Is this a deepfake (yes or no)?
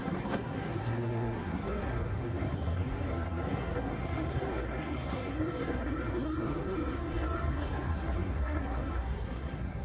yes